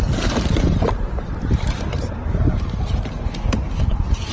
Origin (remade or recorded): remade